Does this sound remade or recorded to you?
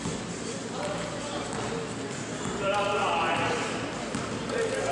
recorded